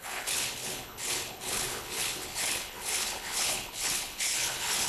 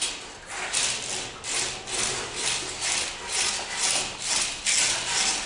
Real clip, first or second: second